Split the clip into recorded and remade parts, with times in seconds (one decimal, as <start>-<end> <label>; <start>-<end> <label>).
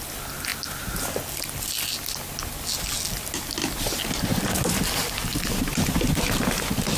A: 0.0-7.0 recorded